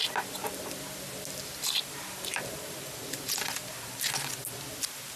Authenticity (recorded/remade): recorded